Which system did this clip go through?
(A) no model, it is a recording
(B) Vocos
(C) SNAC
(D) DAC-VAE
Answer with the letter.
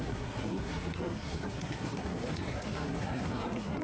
C